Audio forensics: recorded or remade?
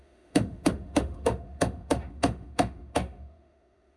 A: remade